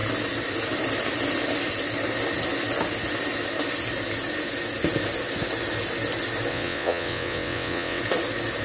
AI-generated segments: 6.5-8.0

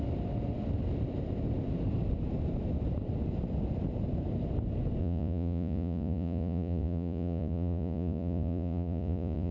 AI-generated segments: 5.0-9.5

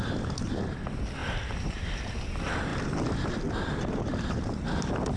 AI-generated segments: 1.2-2.1; 2.7-3.4

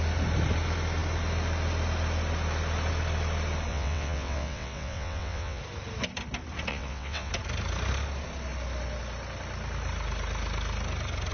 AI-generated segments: 3.7-5.6; 6.7-7.3

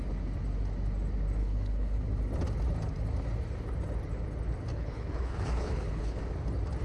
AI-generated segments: 1.4-2.0; 4.7-6.2